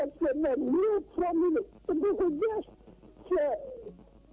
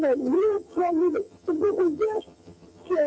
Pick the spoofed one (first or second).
second